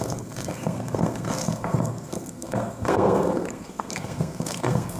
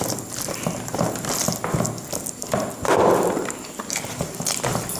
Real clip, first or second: second